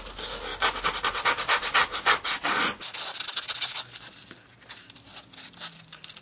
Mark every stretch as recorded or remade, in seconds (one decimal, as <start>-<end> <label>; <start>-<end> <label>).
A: 0.0-6.2 recorded